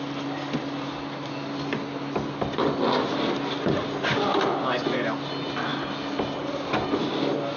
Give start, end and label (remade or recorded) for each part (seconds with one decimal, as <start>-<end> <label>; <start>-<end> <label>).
0.0-7.6 recorded

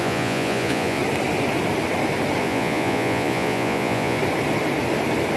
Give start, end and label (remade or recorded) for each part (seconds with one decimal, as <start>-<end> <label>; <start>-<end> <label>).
0.0-1.0 remade; 1.0-2.4 recorded; 2.4-4.2 remade; 4.2-5.4 recorded

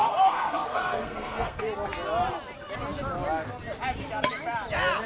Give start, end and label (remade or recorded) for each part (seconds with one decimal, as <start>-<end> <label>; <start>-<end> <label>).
0.0-1.6 remade; 1.6-5.1 recorded

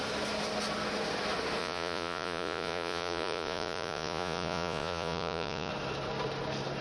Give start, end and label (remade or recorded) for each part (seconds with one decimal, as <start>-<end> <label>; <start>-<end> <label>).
0.0-1.6 recorded; 1.6-5.7 remade; 5.7-6.8 recorded

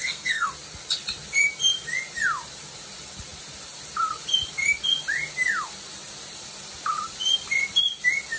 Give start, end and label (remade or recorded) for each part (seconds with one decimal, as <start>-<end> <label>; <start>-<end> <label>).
0.0-0.5 remade; 0.5-8.4 recorded